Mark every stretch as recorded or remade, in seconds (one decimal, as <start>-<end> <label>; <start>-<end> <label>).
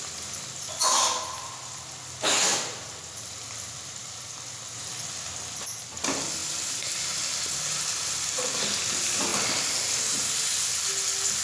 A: 0.0-2.5 recorded; 2.5-4.8 remade; 4.8-11.4 recorded